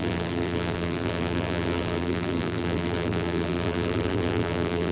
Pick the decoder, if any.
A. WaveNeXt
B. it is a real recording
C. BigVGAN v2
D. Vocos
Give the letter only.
C